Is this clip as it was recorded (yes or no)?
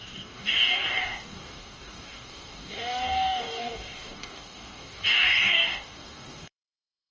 no